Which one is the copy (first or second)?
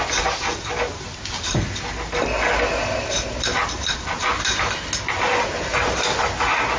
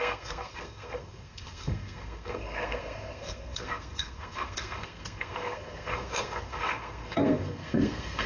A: second